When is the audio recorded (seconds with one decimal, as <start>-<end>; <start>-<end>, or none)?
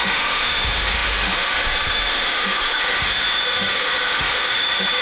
none